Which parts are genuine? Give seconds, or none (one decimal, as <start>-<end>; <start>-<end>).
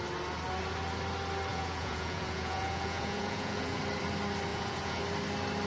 0.0-1.5; 3.8-4.5; 5.0-5.7